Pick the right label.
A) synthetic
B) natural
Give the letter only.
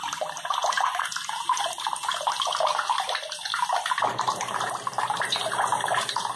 A